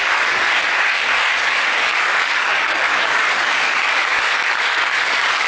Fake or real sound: fake